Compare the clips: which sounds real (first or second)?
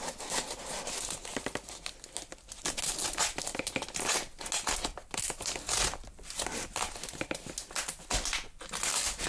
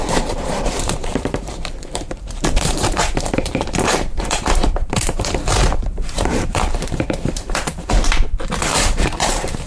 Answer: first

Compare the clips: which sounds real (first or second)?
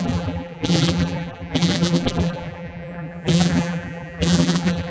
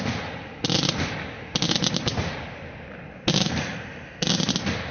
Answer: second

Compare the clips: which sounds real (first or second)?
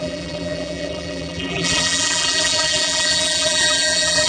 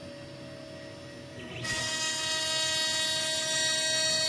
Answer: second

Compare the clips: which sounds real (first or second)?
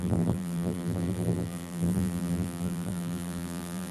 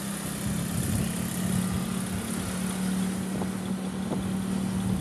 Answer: second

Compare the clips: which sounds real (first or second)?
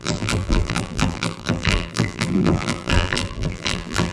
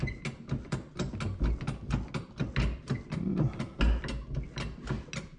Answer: second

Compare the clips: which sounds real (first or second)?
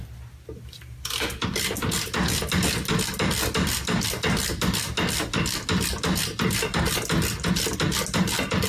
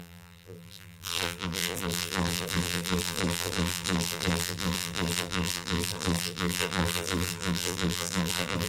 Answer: first